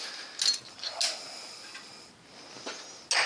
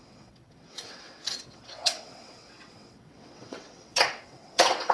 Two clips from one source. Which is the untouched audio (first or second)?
first